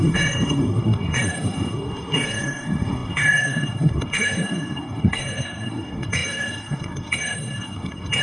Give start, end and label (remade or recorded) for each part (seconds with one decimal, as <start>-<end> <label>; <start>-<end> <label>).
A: 0.0-8.2 remade